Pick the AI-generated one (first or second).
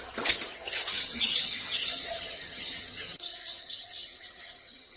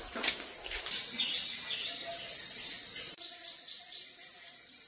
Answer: first